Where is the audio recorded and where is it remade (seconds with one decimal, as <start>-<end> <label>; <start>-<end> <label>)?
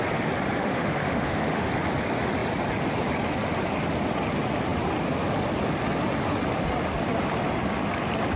0.0-0.6 recorded; 0.6-1.7 remade; 1.7-8.4 recorded